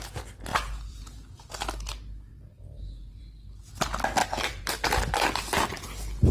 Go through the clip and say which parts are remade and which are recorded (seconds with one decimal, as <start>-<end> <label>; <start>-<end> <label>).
0.0-0.5 recorded; 0.5-1.5 remade; 1.5-2.3 recorded; 2.3-3.2 remade; 3.2-4.2 recorded; 4.2-4.7 remade; 4.7-6.3 recorded